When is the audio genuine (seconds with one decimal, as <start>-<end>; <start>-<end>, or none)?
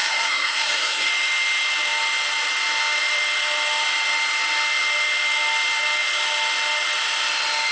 1.1-7.7